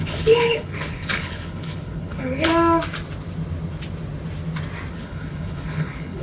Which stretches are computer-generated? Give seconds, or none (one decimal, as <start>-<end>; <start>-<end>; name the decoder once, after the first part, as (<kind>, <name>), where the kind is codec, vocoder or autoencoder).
0.0-2.5 (codec, HILCodec); 4.9-6.2